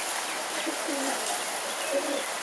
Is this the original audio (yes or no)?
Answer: yes